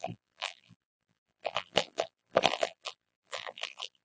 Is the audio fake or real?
fake